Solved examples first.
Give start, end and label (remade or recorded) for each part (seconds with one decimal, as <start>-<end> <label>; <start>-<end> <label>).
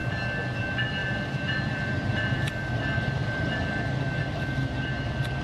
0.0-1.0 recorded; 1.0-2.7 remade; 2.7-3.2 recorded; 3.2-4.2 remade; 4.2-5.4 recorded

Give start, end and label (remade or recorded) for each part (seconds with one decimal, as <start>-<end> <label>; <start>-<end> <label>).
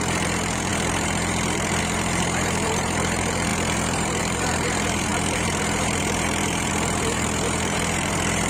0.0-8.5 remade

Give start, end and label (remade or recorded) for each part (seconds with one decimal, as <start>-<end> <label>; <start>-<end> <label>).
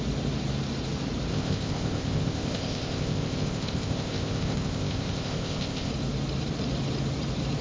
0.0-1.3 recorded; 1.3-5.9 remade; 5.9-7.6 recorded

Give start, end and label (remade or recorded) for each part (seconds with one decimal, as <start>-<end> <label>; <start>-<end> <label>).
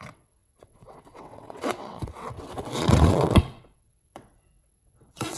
0.0-5.4 remade